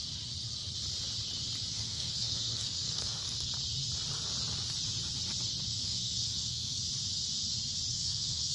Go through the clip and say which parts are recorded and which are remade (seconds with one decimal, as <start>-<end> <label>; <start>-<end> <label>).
0.0-1.7 recorded; 1.7-3.5 remade; 3.5-5.8 recorded; 5.8-6.8 remade; 6.8-7.9 recorded; 7.9-8.5 remade